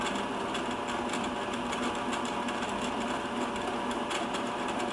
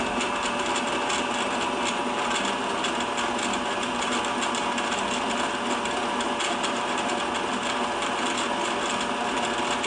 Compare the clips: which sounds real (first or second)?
second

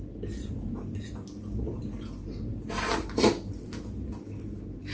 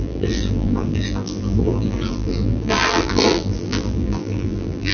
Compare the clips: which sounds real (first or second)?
first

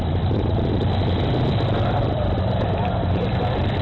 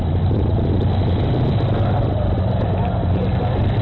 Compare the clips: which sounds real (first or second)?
second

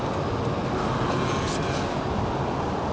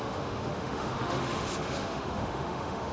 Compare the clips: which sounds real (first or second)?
first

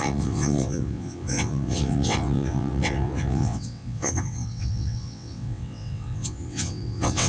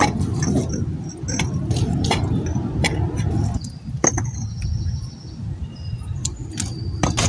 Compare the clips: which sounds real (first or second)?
second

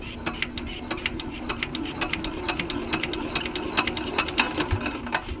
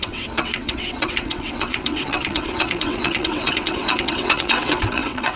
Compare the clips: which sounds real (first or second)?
first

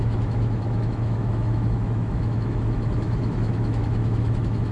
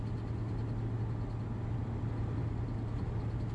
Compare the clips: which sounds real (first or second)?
second